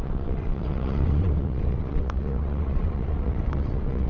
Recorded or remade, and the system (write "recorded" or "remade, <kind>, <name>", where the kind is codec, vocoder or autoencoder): remade, vocoder, WaveNeXt